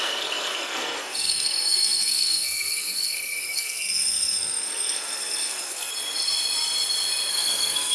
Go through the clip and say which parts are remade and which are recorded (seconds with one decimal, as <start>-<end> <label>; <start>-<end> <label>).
0.0-5.9 remade; 5.9-7.3 recorded; 7.3-7.9 remade